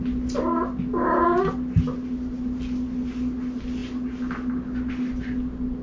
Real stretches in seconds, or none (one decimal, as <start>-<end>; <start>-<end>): 0.0-5.8